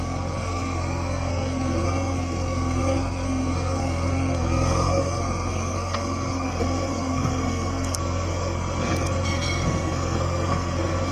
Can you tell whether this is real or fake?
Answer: fake